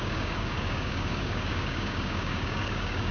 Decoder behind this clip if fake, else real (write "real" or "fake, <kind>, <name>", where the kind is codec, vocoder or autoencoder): fake, codec, DAC